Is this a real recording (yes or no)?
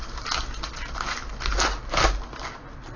yes